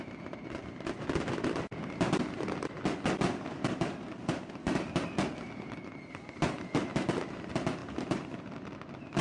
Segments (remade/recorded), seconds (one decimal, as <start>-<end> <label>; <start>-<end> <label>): 0.0-9.2 recorded